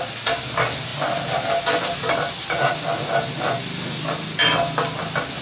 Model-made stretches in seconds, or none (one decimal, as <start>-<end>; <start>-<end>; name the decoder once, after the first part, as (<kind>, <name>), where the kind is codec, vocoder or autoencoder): none